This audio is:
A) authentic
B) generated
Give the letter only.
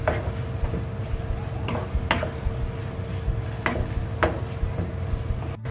A